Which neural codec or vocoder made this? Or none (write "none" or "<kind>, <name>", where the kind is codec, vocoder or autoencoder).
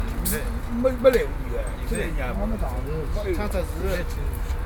none